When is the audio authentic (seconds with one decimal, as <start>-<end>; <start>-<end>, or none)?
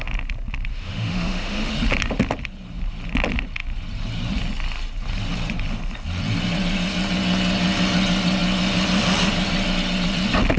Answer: 0.0-0.7; 1.7-10.6